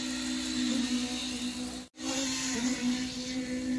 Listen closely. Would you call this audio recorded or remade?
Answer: recorded